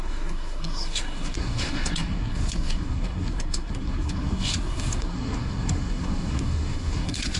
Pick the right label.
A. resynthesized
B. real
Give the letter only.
A